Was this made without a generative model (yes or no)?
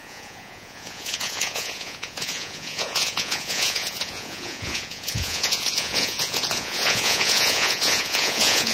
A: no